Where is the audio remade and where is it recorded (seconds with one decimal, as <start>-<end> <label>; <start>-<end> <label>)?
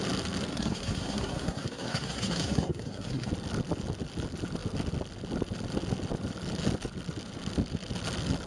0.0-0.5 recorded; 0.5-3.3 remade; 3.3-8.5 recorded